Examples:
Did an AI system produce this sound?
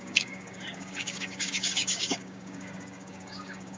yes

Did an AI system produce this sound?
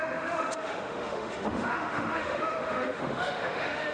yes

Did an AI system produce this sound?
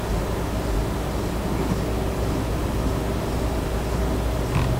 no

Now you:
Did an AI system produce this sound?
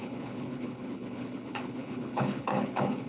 yes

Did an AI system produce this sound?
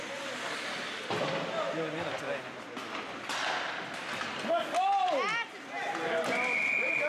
no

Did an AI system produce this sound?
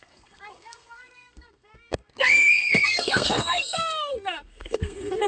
yes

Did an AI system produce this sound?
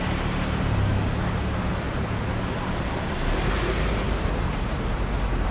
no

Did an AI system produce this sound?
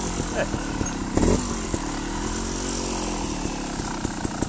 no